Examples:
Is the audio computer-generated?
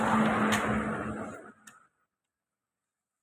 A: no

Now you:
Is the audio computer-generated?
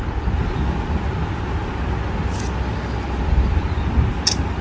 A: no